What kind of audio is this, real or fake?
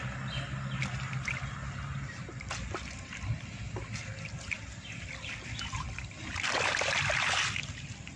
fake